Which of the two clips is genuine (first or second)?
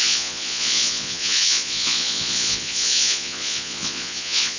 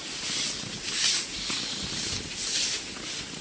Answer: second